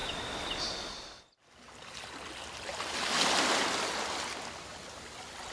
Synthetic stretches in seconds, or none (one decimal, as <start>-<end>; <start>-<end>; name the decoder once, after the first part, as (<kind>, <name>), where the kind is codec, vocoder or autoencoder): none